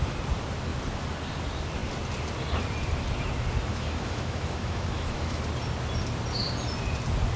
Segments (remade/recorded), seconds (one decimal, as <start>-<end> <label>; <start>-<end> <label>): 0.0-3.7 recorded; 3.7-5.4 remade; 5.4-7.4 recorded